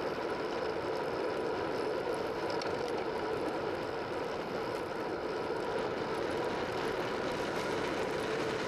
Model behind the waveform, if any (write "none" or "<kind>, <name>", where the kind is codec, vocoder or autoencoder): none